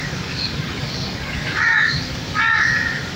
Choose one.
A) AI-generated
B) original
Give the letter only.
A